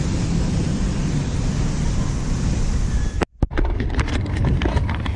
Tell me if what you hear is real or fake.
real